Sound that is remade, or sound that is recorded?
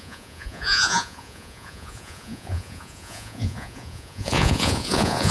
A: remade